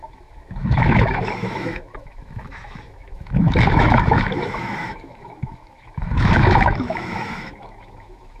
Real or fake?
fake